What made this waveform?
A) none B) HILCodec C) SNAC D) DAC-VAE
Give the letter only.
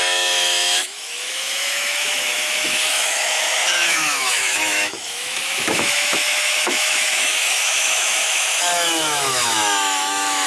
D